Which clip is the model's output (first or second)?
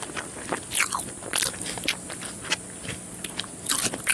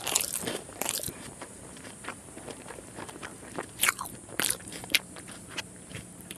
second